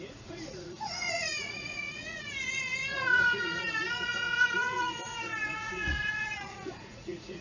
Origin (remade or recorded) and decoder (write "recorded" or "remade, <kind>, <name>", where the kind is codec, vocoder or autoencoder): remade, vocoder, Vocos